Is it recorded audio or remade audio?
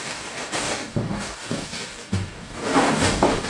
remade